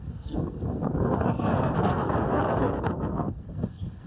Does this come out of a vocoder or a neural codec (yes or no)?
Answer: yes